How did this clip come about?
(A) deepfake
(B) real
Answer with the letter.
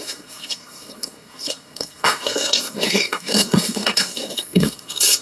A